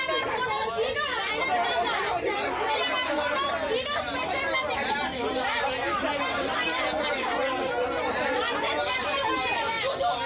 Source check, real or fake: real